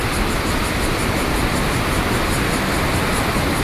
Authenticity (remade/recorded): recorded